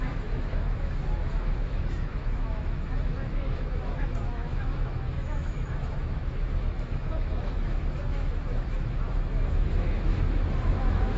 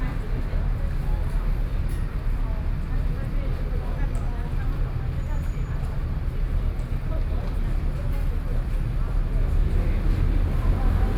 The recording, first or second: second